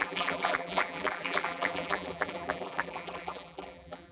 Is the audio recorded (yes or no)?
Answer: no